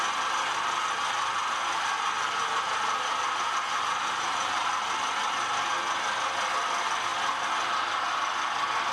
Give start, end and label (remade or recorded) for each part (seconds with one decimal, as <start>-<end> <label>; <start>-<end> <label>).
0.0-1.4 recorded; 1.4-4.6 remade; 4.6-8.9 recorded

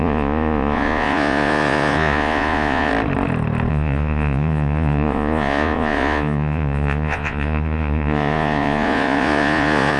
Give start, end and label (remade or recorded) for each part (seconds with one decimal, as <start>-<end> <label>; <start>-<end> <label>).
0.0-2.9 remade; 2.9-3.7 recorded; 3.7-10.0 remade